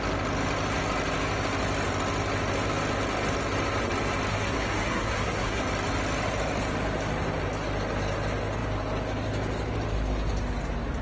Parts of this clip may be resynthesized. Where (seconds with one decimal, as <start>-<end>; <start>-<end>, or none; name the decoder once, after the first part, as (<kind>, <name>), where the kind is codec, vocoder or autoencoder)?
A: 4.3-5.6 (codec, SNAC)